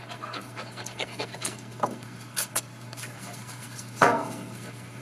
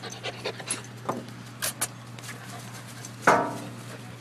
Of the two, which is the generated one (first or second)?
first